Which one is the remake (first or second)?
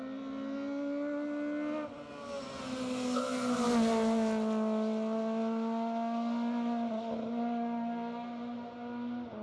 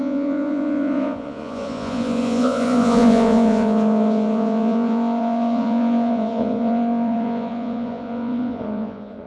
second